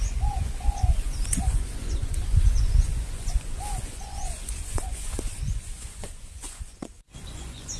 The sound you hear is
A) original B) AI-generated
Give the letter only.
B